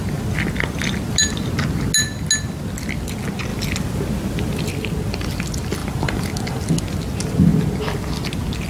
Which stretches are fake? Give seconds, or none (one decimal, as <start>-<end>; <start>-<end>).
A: 5.8-6.8